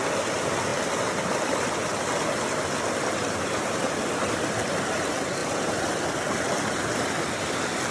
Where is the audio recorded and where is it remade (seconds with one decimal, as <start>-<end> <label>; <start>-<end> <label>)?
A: 0.0-7.9 recorded